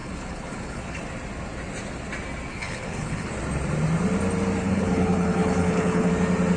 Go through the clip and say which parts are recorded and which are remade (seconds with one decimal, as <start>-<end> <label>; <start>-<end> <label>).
0.0-1.0 remade; 1.0-2.5 recorded; 2.5-3.3 remade; 3.3-4.6 recorded; 4.6-6.1 remade; 6.1-6.6 recorded